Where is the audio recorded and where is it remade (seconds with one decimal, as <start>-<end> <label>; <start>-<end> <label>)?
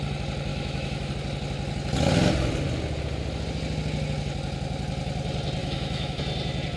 0.0-0.5 recorded; 0.5-1.1 remade; 1.1-5.6 recorded; 5.6-6.2 remade; 6.2-6.8 recorded